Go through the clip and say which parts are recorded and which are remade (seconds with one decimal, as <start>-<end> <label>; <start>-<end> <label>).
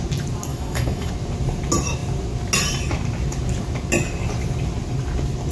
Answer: 0.0-0.5 recorded; 0.5-1.1 remade; 1.1-5.5 recorded